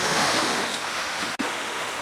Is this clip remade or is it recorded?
remade